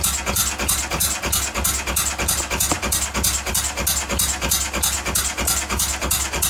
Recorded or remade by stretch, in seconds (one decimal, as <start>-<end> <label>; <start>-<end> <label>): 0.0-6.5 recorded